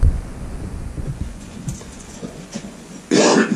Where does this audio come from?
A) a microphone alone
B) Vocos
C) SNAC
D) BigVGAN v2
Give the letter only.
B